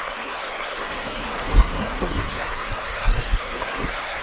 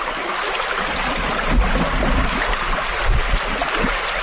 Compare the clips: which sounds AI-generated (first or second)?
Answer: first